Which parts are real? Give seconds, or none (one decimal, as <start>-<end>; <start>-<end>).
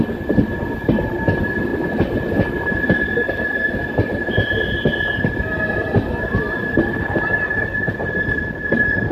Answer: 0.0-8.0